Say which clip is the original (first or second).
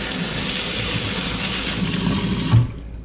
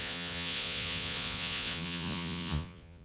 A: first